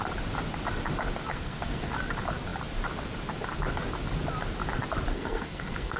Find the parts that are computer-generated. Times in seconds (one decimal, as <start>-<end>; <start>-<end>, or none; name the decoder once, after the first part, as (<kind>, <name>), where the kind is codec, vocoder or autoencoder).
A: 1.3-1.9 (codec, SNAC); 5.1-6.0